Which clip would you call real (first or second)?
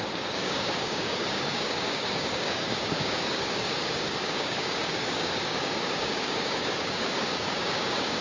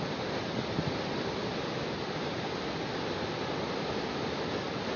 second